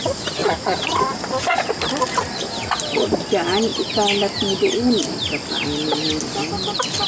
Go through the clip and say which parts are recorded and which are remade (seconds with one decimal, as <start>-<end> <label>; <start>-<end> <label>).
0.0-7.1 recorded